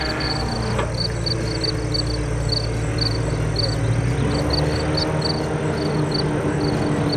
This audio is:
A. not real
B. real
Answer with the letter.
B